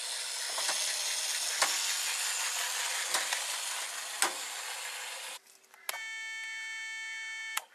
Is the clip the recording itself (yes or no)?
yes